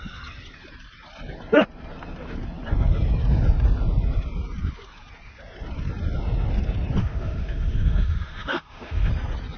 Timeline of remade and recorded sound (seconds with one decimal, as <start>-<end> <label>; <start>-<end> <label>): 0.0-7.0 recorded; 7.0-9.1 remade; 9.1-9.6 recorded